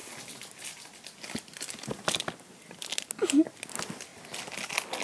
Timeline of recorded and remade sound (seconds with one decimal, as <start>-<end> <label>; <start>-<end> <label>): 0.0-5.0 recorded